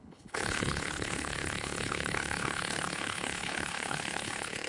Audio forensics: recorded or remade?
remade